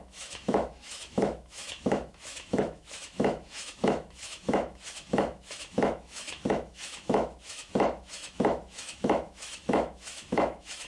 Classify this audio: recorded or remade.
remade